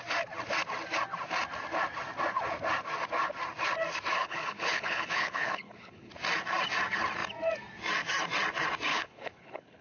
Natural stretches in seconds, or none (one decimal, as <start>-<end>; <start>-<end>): 0.0-4.2; 6.1-8.9